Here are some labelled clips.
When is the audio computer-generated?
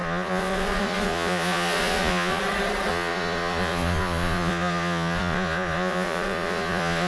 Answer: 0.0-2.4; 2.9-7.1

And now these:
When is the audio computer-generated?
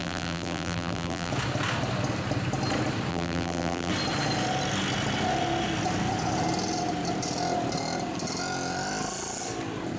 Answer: 0.0-1.3; 3.1-3.9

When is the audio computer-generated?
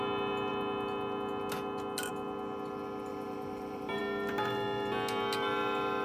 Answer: 3.1-4.0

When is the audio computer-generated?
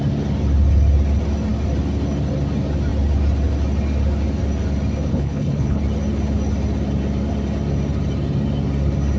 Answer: 5.1-5.8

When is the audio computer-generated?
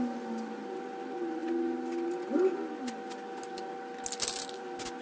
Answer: none